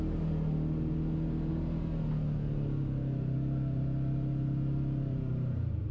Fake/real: real